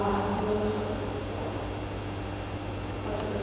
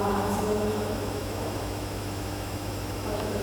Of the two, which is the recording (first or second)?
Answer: first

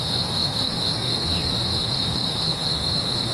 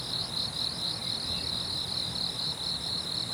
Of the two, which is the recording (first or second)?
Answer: second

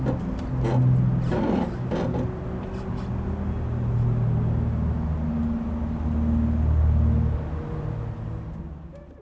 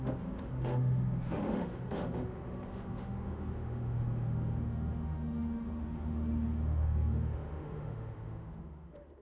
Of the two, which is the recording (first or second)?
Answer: first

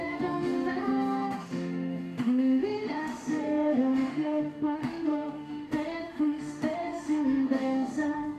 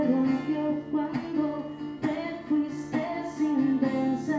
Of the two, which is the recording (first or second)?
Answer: second